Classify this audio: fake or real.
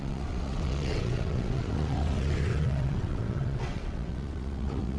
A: fake